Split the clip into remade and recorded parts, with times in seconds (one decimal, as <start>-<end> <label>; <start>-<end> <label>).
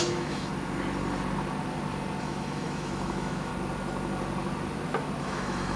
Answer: 0.0-0.5 remade; 0.5-2.2 recorded; 2.2-3.5 remade; 3.5-5.2 recorded; 5.2-5.8 remade